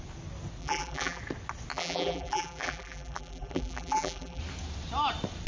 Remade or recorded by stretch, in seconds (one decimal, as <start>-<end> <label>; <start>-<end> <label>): 0.0-0.6 recorded; 0.6-1.2 remade; 1.2-1.7 recorded; 1.7-4.4 remade; 4.4-5.5 recorded